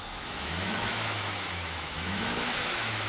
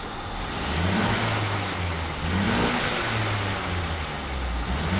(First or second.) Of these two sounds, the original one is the second